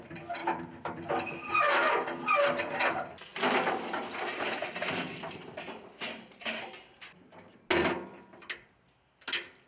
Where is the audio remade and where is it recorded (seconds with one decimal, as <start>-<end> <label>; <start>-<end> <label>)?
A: 0.0-3.3 recorded; 3.3-7.6 remade; 7.6-9.7 recorded